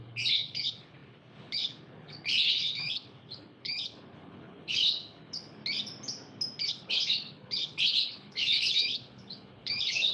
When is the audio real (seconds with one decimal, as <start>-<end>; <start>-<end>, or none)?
5.6-6.7